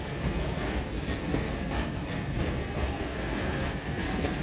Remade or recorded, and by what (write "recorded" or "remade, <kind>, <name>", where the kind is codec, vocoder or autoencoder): remade, codec, SNAC